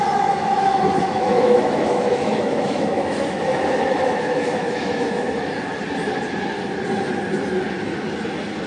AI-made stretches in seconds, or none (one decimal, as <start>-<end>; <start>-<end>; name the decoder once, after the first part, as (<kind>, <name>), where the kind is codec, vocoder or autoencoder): 0.7-5.5 (autoencoder, DAC-VAE)